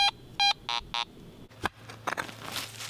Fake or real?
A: real